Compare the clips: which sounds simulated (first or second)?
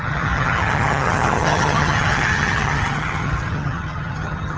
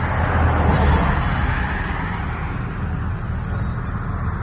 first